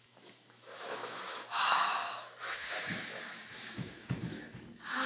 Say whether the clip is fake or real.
fake